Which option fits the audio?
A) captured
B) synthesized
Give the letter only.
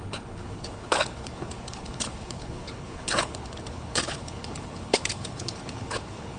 B